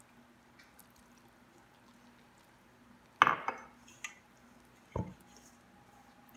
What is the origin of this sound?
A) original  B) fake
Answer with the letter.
A